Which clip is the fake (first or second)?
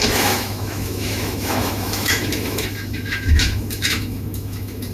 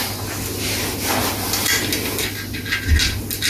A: first